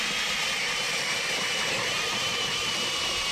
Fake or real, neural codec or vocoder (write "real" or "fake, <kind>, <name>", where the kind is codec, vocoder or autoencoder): fake, vocoder, BigVGAN v2